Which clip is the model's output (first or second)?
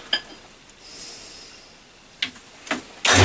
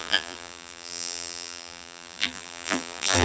second